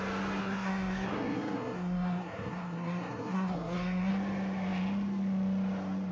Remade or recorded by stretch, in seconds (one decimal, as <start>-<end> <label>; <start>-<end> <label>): 0.0-0.4 recorded; 0.4-4.1 remade; 4.1-6.1 recorded